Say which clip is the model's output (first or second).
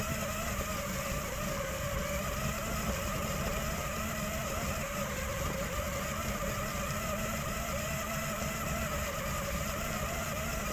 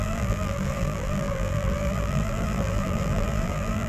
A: second